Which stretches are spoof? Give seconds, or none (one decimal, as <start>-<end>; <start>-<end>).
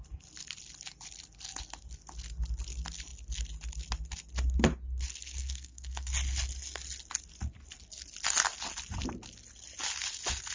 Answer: 5.4-6.1